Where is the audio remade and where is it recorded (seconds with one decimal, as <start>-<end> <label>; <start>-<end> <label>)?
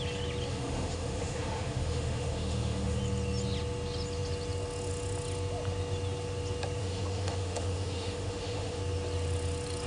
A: 0.0-0.5 recorded; 0.5-3.0 remade; 3.0-6.8 recorded; 6.8-8.8 remade; 8.8-9.9 recorded